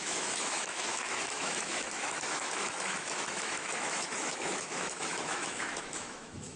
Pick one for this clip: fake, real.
fake